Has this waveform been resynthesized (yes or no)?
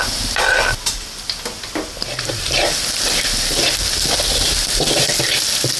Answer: no